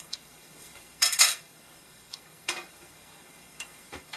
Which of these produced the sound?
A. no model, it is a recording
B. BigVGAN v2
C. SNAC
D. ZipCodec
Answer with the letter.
C